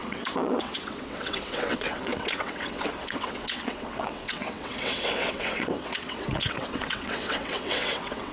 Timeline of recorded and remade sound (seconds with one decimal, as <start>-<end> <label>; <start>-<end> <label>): 0.0-8.3 remade